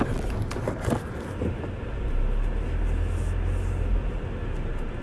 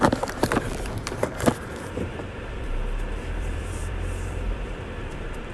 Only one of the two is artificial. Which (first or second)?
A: second